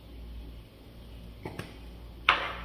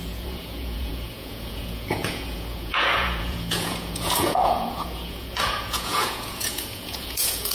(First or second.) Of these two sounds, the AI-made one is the second